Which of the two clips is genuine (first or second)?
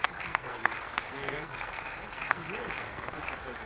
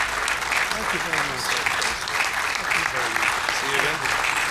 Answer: second